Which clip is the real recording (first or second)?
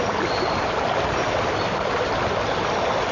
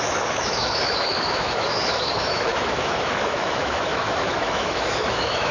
first